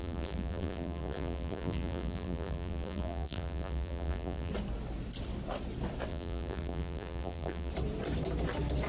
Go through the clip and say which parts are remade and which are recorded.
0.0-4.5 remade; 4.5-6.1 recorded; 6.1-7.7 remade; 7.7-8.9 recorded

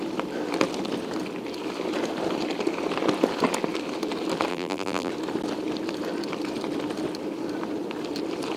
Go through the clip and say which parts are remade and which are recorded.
0.0-4.5 recorded; 4.5-5.1 remade; 5.1-8.6 recorded

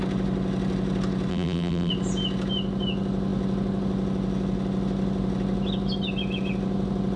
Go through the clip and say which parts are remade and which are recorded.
0.0-1.3 recorded; 1.3-1.9 remade; 1.9-7.2 recorded